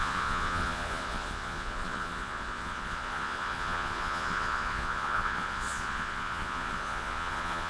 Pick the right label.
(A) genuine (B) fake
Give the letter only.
B